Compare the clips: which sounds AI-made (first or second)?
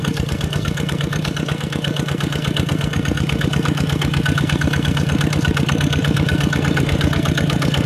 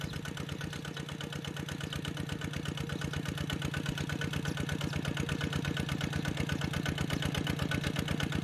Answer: first